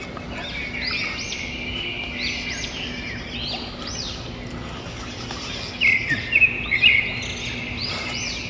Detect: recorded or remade recorded